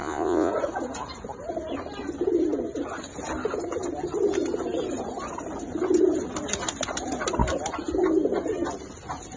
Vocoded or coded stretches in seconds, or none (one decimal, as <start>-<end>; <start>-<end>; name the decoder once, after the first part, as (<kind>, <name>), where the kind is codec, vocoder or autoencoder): 0.0-0.5 (vocoder, Vocos)